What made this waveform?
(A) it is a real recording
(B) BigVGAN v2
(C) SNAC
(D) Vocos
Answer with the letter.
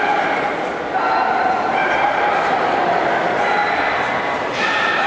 A